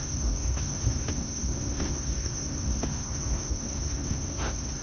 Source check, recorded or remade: remade